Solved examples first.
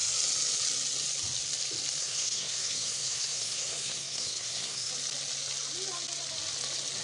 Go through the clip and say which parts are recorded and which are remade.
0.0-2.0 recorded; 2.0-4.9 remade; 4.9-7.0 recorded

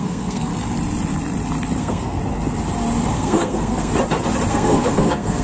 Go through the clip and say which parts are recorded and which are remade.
0.0-0.5 remade; 0.5-1.8 recorded; 1.8-2.2 remade; 2.2-3.1 recorded; 3.1-3.9 remade; 3.9-4.5 recorded; 4.5-5.4 remade

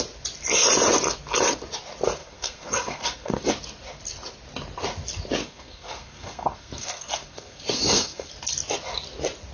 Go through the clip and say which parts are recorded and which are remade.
0.0-2.2 recorded; 2.2-3.4 remade; 3.4-5.4 recorded; 5.4-8.3 remade; 8.3-9.5 recorded

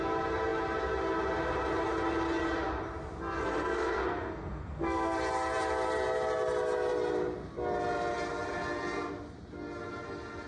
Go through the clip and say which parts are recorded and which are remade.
0.0-3.5 recorded; 3.5-5.2 remade; 5.2-10.5 recorded

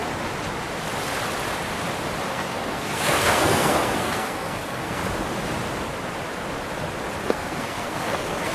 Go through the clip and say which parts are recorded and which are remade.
0.0-2.3 recorded; 2.3-5.0 remade; 5.0-7.2 recorded; 7.2-8.5 remade

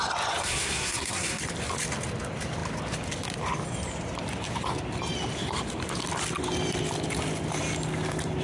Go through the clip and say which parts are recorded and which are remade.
0.0-0.4 recorded; 0.4-1.4 remade; 1.4-8.4 recorded

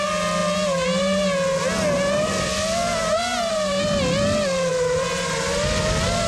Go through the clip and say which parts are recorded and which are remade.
0.0-6.3 recorded

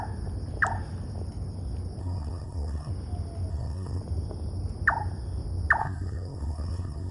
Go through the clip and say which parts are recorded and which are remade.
0.0-2.0 recorded; 2.0-2.9 remade; 2.9-3.5 recorded; 3.5-4.0 remade; 4.0-5.8 recorded; 5.8-7.1 remade